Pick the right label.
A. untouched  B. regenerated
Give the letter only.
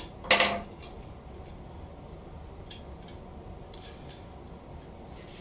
A